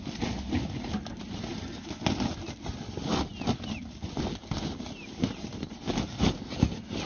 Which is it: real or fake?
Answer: real